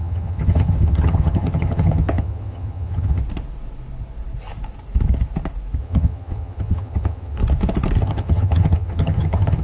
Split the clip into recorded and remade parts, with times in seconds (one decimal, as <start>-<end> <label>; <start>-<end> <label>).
0.0-3.2 remade; 3.2-5.8 recorded; 5.8-7.4 remade; 7.4-8.0 recorded; 8.0-9.6 remade